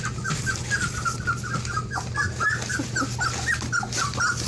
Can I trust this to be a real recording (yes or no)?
yes